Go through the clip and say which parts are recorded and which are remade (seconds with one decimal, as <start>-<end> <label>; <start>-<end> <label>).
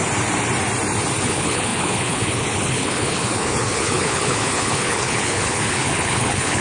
0.0-1.2 recorded; 1.2-6.6 remade